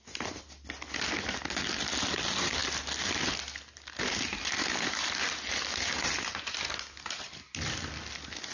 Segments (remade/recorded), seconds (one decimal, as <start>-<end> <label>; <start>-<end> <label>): 0.0-8.5 recorded